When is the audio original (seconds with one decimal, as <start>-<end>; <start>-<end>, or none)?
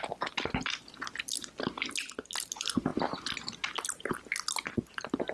0.0-5.3